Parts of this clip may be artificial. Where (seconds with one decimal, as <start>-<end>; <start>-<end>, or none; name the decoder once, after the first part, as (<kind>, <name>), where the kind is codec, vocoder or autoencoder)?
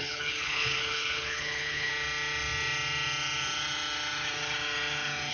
0.0-1.9 (codec, HILCodec)